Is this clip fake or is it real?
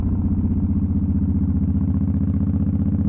real